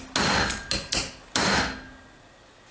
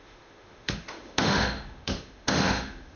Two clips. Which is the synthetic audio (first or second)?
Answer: second